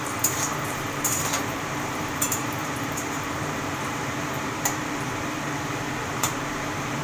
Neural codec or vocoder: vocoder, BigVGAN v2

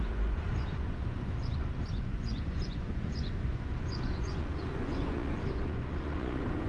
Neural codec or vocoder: vocoder, Vocos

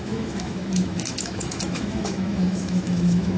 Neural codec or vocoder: autoencoder, DAC-VAE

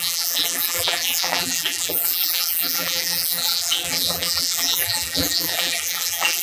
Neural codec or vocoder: vocoder, BigVGAN v2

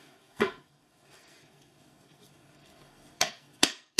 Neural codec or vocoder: codec, SNAC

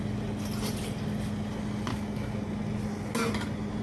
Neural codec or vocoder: none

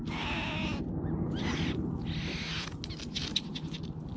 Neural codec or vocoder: none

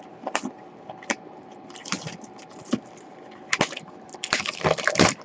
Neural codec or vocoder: none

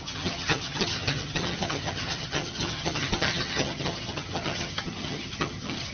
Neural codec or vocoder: vocoder, HiFi-GAN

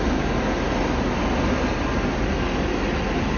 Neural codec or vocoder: none